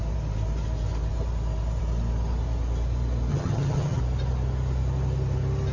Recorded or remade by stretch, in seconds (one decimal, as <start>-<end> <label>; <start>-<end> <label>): 0.0-3.3 recorded; 3.3-4.0 remade; 4.0-5.7 recorded